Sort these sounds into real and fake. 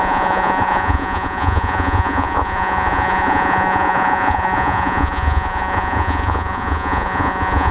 fake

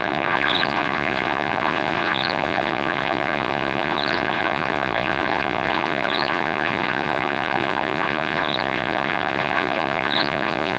fake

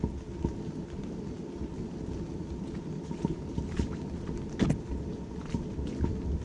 real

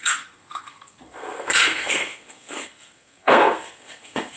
fake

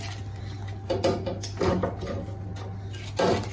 real